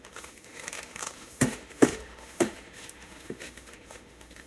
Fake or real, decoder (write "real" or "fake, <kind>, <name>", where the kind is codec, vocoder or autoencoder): fake, autoencoder, DAC-VAE